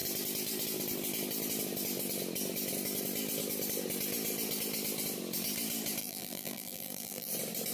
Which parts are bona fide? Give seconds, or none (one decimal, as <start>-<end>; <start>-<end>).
0.0-6.0; 7.3-7.7